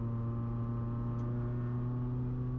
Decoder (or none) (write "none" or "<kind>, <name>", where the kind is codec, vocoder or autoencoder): none